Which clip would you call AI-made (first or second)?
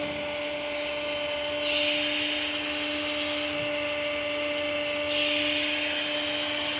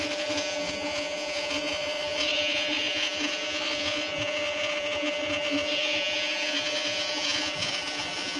second